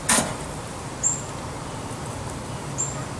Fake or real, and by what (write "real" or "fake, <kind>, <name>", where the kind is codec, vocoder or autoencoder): real